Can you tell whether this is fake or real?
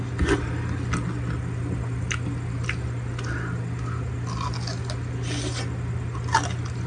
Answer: real